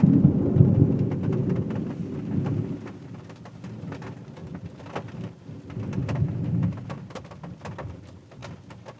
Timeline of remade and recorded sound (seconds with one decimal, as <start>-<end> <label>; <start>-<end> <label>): 0.0-9.0 recorded